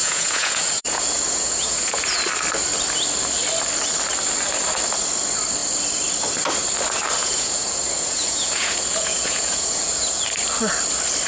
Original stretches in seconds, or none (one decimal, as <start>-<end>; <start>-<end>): 2.2-7.2; 10.2-11.3